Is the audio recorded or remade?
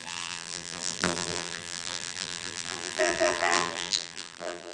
remade